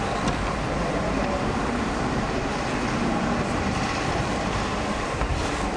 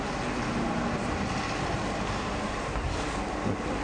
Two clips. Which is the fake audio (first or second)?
first